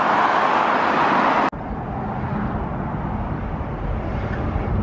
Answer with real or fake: real